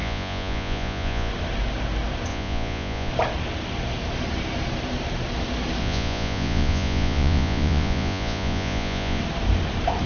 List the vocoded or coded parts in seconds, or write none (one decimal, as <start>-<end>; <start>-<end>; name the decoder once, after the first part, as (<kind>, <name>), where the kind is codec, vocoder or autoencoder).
0.0-1.3 (vocoder, Vocos); 2.3-3.1; 5.8-9.2